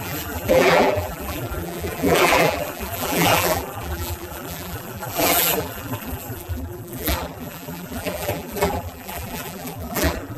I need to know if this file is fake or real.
fake